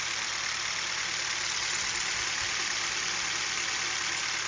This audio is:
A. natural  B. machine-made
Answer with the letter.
A